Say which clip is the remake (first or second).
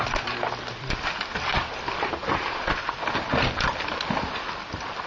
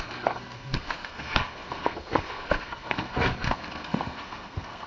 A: second